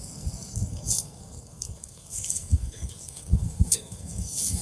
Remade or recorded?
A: remade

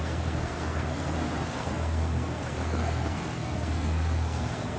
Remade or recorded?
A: remade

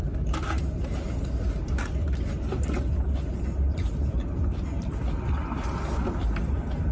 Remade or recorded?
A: recorded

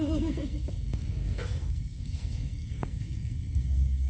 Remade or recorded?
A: remade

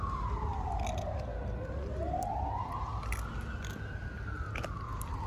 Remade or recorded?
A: recorded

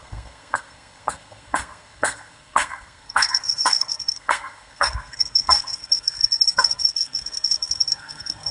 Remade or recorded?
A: remade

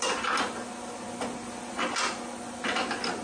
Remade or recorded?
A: recorded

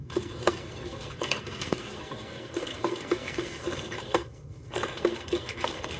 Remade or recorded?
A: remade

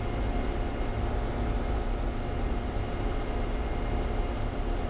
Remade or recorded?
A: recorded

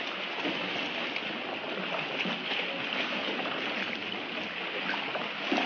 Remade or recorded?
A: recorded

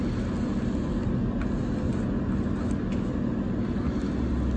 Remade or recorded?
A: recorded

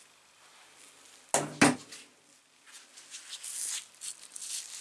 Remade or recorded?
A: recorded